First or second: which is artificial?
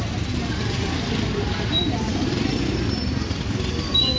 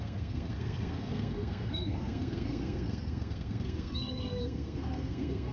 second